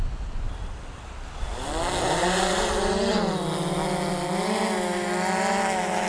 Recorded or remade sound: recorded